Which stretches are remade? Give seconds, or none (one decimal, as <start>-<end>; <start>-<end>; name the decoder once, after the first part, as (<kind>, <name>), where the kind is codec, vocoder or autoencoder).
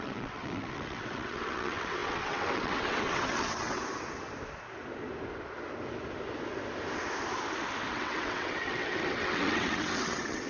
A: 0.0-3.8 (vocoder, WaveNeXt); 7.9-10.5